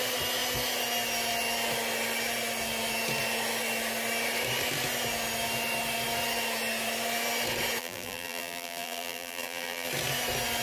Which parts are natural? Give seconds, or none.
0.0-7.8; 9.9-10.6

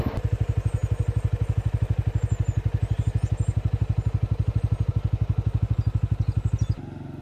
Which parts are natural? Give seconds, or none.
0.0-7.2

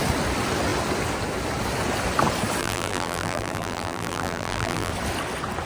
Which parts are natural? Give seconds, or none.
0.0-2.6; 4.9-5.7

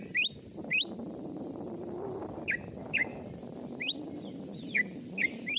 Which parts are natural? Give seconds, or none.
0.0-5.6

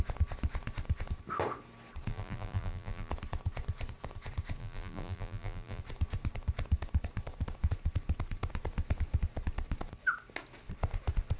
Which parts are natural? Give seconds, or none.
0.0-2.1; 3.1-4.6; 5.8-11.4

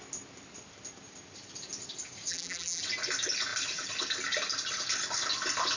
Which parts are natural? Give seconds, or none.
0.0-2.3; 2.8-5.8

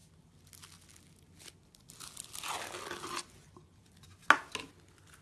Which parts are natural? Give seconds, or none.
0.0-5.2

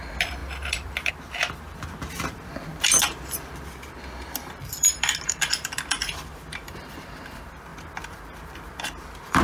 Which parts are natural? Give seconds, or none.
none